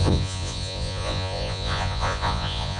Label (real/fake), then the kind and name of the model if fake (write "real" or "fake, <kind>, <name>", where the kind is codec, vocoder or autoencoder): fake, vocoder, Vocos